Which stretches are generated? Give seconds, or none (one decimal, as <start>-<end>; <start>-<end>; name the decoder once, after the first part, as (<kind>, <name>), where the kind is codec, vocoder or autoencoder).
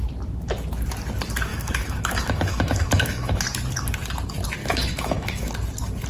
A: 1.5-3.4 (autoencoder, DAC-VAE); 4.6-5.5